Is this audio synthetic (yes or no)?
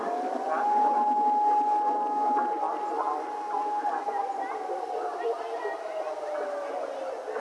no